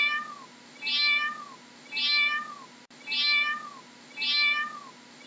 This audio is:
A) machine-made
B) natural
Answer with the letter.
B